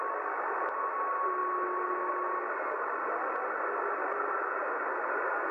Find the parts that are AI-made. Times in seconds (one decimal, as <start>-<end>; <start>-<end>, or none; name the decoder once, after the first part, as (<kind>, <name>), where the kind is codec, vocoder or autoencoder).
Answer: none